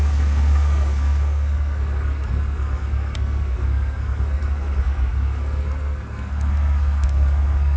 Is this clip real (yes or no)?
no